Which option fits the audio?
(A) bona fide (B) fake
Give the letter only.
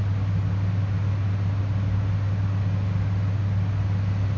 A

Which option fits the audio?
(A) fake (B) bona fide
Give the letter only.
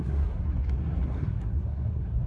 A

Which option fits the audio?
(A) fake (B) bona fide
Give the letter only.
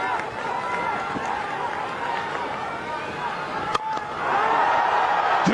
B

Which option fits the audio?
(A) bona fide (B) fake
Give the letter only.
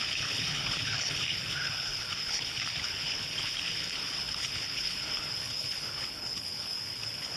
B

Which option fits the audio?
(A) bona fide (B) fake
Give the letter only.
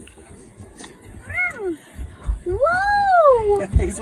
B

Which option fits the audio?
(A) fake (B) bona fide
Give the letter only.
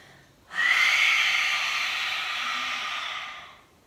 B